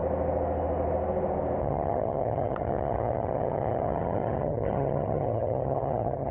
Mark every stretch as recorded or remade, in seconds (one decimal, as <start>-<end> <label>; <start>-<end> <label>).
0.0-1.6 recorded; 1.6-6.3 remade